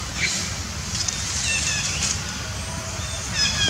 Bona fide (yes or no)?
yes